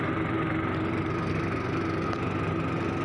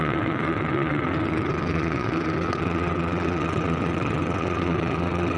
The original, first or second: first